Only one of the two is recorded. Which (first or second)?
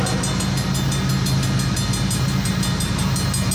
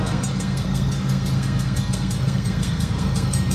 first